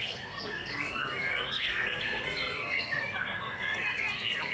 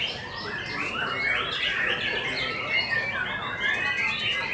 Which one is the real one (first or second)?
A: second